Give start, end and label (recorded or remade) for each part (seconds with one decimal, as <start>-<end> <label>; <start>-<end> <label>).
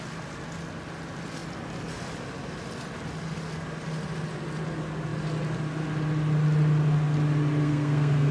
0.0-7.6 recorded; 7.6-8.3 remade